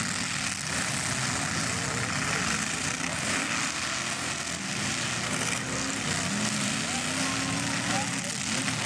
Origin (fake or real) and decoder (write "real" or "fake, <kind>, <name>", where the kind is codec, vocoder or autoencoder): real